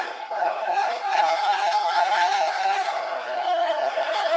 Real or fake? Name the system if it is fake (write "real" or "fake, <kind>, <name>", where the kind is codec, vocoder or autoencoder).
fake, codec, SNAC